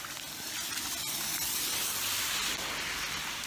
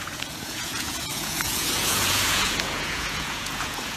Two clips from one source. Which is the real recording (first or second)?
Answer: first